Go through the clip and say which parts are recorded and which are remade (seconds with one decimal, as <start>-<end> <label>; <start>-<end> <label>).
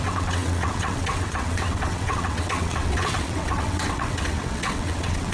0.0-5.3 remade